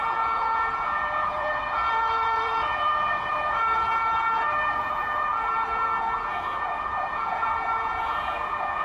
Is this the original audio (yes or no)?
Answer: no